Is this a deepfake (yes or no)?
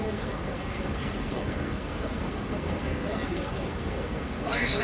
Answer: yes